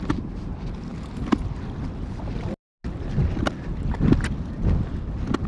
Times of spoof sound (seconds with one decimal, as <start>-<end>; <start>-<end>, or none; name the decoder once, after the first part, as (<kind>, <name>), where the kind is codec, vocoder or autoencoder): none

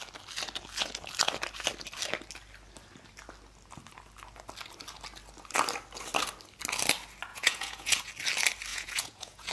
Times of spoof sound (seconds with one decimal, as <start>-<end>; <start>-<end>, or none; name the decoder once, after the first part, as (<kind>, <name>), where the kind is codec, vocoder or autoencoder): 7.3-8.0 (vocoder, Vocos); 8.7-9.5